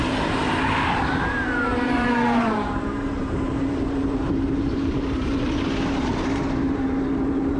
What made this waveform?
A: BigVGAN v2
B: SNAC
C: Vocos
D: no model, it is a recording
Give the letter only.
A